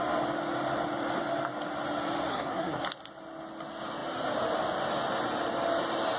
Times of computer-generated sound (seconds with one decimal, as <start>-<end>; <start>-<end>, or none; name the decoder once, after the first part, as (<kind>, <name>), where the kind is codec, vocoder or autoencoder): 2.3-2.8 (codec, SNAC)